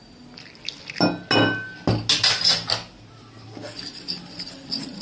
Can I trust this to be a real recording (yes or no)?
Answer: yes